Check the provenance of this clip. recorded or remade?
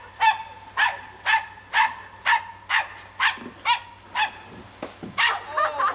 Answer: recorded